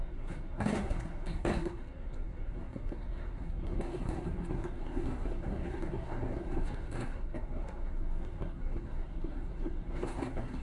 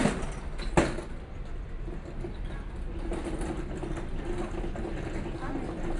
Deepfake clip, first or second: first